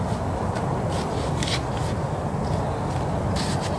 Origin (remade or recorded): recorded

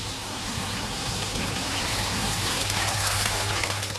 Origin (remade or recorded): remade